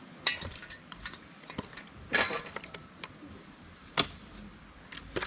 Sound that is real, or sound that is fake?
fake